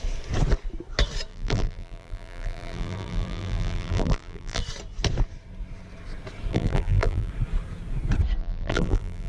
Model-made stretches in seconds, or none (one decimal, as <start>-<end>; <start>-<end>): 1.3-4.6; 6.5-7.3; 8.4-9.3